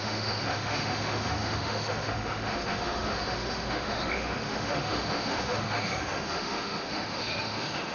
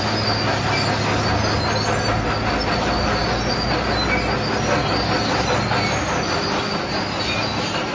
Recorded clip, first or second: second